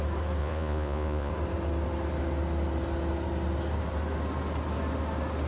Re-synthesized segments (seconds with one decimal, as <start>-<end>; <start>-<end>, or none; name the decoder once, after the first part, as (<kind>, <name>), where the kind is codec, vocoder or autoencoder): 0.4-1.3 (vocoder, Vocos)